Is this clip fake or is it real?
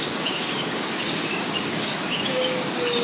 fake